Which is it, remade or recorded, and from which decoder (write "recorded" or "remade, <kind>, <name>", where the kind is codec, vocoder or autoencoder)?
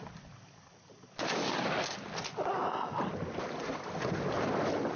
recorded